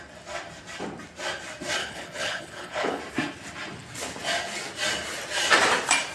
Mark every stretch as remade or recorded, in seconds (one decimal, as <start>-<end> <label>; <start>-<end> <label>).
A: 0.0-1.8 recorded; 1.8-3.0 remade; 3.0-6.1 recorded

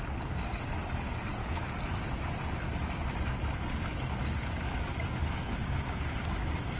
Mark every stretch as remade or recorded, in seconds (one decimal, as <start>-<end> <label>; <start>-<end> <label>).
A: 0.0-1.4 recorded; 1.4-2.0 remade; 2.0-4.9 recorded; 4.9-6.8 remade

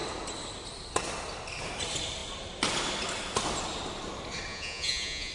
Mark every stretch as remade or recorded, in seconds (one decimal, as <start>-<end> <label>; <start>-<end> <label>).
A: 0.0-4.5 recorded; 4.5-5.3 remade

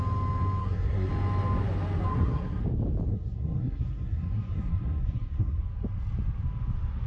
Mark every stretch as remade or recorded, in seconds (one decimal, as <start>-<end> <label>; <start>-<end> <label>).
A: 0.0-0.6 recorded; 0.6-1.1 remade; 1.1-2.1 recorded; 2.1-2.6 remade; 2.6-3.1 recorded; 3.1-5.6 remade; 5.6-7.1 recorded

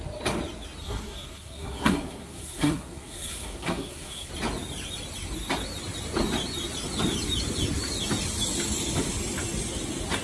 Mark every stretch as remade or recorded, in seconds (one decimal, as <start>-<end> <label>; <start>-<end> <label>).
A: 0.0-0.8 recorded; 0.8-4.3 remade; 4.3-10.2 recorded

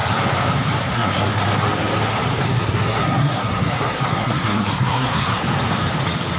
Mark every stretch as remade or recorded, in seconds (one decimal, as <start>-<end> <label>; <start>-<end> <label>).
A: 0.0-0.9 recorded; 0.9-1.3 remade; 1.3-2.4 recorded; 2.4-5.4 remade; 5.4-6.4 recorded

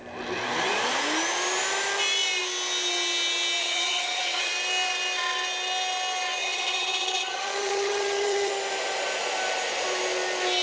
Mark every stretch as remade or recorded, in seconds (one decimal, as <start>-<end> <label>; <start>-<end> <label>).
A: 0.0-3.6 recorded; 3.6-4.5 remade; 4.5-6.4 recorded; 6.4-8.5 remade; 8.5-10.6 recorded

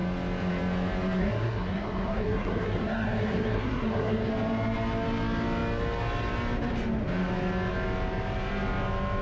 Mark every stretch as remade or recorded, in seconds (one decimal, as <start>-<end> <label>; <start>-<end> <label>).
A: 0.0-1.2 recorded; 1.2-4.3 remade; 4.3-9.2 recorded